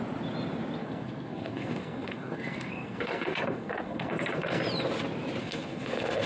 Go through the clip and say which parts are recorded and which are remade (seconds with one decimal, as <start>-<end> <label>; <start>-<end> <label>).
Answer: 0.0-0.8 recorded; 0.8-4.6 remade; 4.6-5.4 recorded; 5.4-6.3 remade